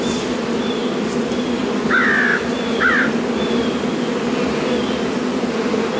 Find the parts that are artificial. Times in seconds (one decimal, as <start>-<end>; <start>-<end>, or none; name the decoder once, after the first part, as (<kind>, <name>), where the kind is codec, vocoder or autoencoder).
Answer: none